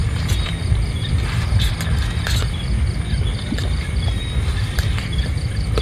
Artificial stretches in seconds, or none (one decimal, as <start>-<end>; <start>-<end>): 0.0-1.7; 3.3-5.8